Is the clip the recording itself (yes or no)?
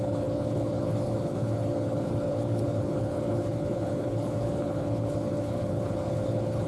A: no